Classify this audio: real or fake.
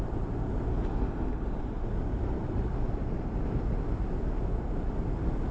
real